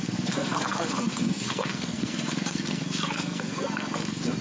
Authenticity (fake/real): fake